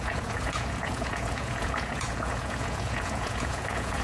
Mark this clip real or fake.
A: fake